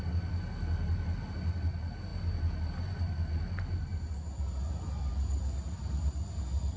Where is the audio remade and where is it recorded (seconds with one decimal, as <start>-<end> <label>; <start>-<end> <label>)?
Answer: 0.0-6.8 recorded

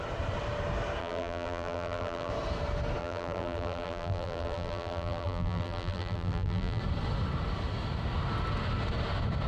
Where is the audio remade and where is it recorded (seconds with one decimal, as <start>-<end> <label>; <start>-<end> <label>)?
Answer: 0.0-1.0 recorded; 1.0-2.3 remade; 2.3-3.0 recorded; 3.0-6.8 remade; 6.8-9.5 recorded

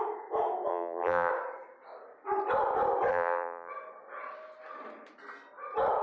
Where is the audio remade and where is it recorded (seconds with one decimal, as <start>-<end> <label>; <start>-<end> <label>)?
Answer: 0.0-0.7 recorded; 0.7-1.3 remade; 1.3-3.1 recorded; 3.1-3.7 remade; 3.7-6.0 recorded

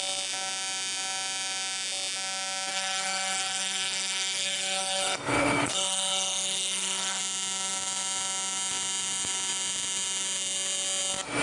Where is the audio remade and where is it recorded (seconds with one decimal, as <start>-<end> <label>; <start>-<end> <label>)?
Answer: 0.0-2.7 recorded; 2.7-7.2 remade; 7.2-11.4 recorded

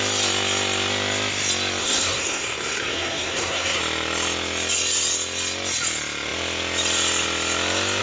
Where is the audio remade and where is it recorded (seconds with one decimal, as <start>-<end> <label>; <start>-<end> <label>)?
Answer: 0.0-1.8 recorded; 1.8-3.8 remade; 3.8-8.0 recorded

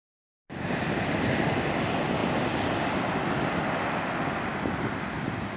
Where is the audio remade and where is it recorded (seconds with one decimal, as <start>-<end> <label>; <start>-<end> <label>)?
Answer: 0.0-5.6 recorded